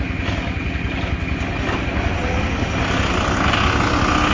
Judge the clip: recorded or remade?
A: recorded